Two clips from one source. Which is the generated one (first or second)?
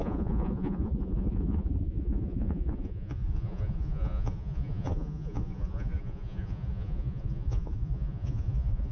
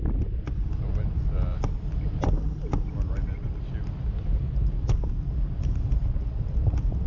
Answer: first